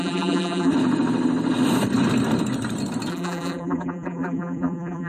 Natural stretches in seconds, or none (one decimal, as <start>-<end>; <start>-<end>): 0.7-3.1